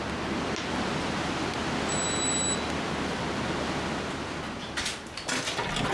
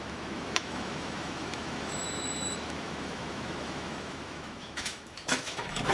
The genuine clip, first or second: first